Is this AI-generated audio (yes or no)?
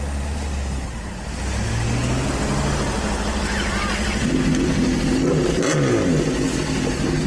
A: no